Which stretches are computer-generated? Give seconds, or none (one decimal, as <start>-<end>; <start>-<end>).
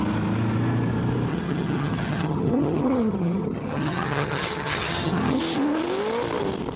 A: 1.3-5.4